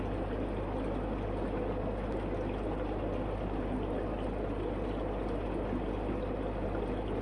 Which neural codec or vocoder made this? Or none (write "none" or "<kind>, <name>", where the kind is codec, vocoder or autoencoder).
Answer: none